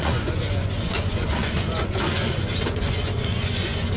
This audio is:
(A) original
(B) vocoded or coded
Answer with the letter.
B